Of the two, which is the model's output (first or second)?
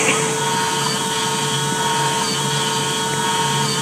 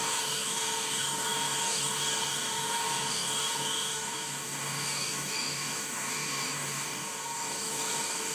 second